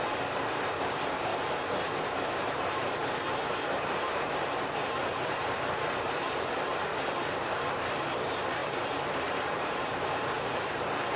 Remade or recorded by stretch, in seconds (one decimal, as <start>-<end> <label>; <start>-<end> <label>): 0.0-6.9 remade; 6.9-7.7 recorded; 7.7-11.2 remade